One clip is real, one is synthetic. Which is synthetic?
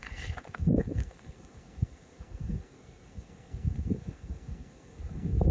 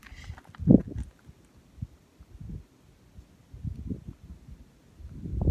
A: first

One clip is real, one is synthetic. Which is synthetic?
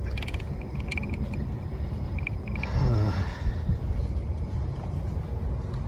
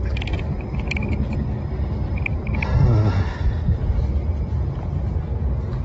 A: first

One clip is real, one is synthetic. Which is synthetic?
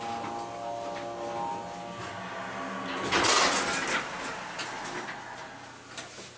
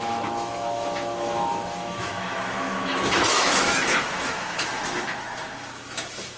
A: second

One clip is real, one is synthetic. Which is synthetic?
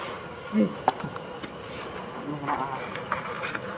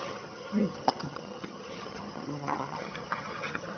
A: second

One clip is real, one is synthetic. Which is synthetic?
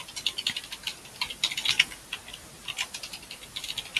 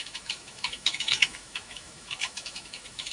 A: second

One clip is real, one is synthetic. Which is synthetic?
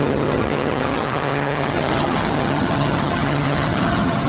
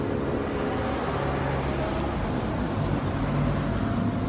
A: first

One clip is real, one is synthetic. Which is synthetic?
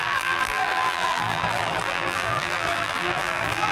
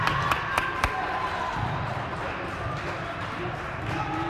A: first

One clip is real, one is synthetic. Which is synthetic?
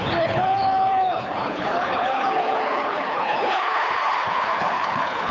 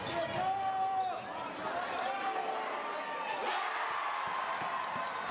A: first